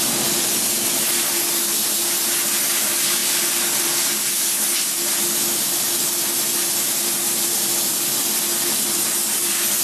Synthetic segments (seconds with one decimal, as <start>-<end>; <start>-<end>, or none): none